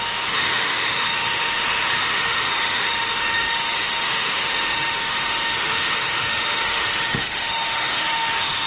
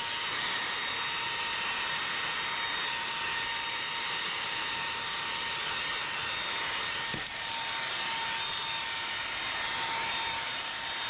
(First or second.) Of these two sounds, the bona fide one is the second